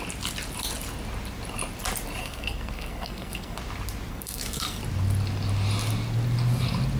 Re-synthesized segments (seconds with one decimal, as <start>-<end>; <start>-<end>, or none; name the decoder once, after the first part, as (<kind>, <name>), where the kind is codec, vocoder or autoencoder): 2.2-3.6 (codec, SNAC); 4.1-4.8